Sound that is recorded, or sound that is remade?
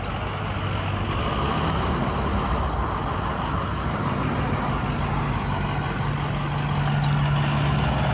recorded